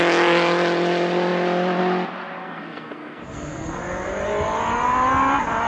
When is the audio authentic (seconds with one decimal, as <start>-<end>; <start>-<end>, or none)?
0.0-2.4; 3.8-5.7